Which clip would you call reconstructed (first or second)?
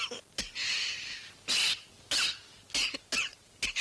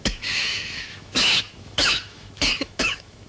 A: second